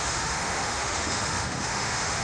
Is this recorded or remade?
remade